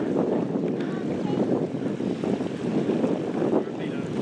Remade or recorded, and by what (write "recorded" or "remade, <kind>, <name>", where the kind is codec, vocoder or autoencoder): recorded